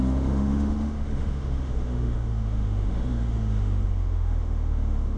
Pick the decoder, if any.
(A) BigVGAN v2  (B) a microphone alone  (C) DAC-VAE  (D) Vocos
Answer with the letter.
C